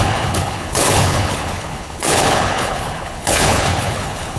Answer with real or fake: fake